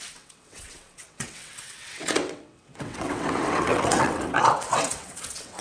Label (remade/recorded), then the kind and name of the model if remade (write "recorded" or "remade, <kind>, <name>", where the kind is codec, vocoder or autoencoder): remade, vocoder, WaveNeXt